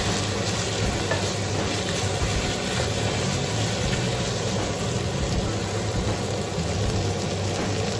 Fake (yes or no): no